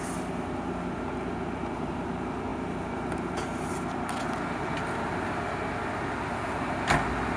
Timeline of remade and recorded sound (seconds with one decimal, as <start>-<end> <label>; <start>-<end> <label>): 0.0-7.4 recorded